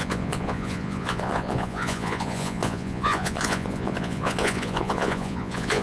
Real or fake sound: fake